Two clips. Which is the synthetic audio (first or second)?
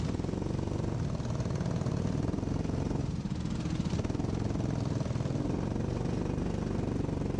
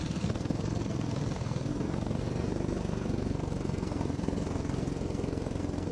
second